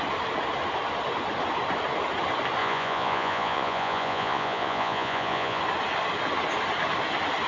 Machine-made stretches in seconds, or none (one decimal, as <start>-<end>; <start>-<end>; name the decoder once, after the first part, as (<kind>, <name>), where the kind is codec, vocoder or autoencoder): 2.6-5.6 (vocoder, Vocos)